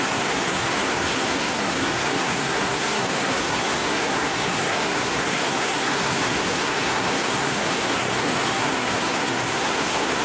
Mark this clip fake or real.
fake